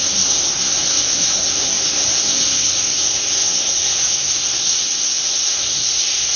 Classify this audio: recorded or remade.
remade